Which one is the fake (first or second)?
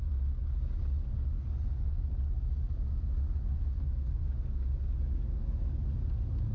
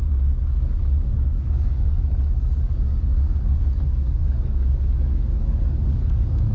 second